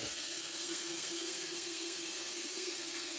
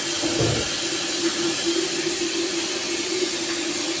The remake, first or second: first